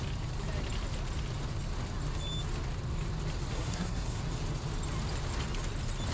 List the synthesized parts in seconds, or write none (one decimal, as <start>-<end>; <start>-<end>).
3.5-4.2